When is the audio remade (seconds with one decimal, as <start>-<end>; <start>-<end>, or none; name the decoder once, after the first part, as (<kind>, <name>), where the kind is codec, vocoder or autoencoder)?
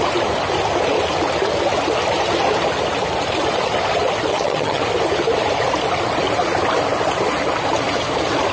4.3-4.8 (vocoder, HiFi-GAN)